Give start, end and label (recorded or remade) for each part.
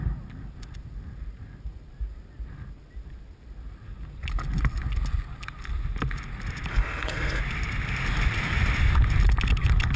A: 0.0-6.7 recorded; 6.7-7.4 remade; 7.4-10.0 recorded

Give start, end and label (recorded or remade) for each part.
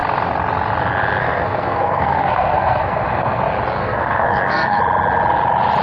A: 0.0-1.2 recorded; 1.2-3.4 remade; 3.4-3.8 recorded; 3.8-4.8 remade; 4.8-5.8 recorded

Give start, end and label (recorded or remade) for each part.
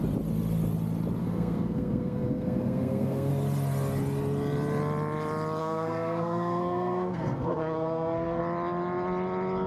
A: 0.0-1.2 recorded; 1.2-3.3 remade; 3.3-5.6 recorded; 5.6-8.4 remade; 8.4-9.7 recorded